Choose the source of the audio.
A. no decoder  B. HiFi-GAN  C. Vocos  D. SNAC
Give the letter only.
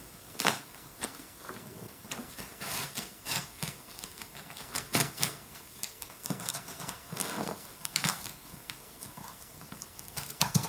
D